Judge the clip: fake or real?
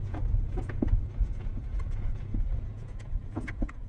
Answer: fake